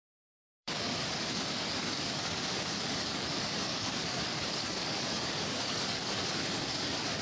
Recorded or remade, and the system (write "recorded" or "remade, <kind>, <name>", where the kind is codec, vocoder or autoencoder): remade, codec, DAC